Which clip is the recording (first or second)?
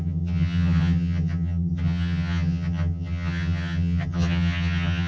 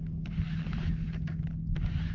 second